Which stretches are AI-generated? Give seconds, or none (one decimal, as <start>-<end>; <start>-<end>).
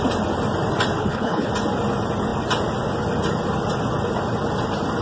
1.0-1.5